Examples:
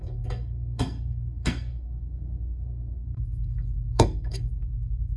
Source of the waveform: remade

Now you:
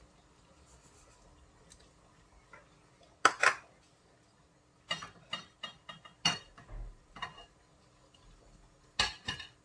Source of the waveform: recorded